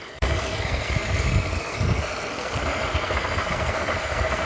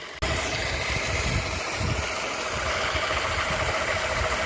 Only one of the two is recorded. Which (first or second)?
second